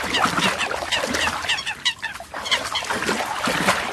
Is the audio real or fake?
real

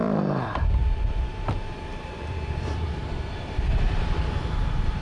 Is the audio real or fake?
fake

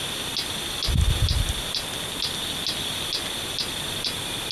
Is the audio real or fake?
real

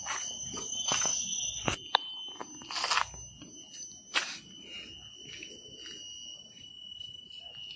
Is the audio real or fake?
real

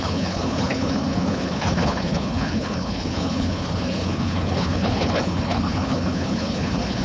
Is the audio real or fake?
fake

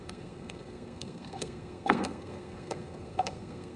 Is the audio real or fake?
fake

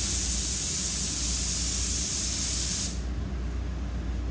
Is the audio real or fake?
real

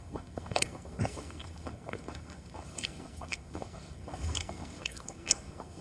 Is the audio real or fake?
fake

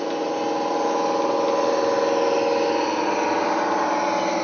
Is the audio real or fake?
real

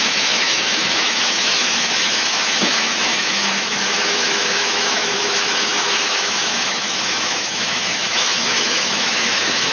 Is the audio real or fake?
fake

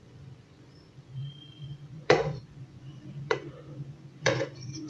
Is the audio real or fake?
fake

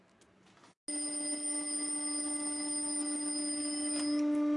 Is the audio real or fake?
real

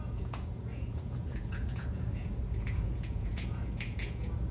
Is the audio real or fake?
fake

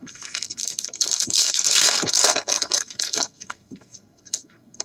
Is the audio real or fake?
fake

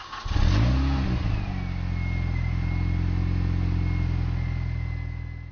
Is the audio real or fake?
real